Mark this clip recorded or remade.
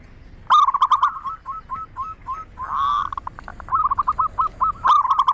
recorded